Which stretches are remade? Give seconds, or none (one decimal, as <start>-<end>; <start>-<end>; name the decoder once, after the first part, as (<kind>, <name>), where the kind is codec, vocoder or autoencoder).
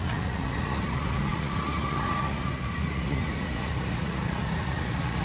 0.0-5.2 (vocoder, Vocos)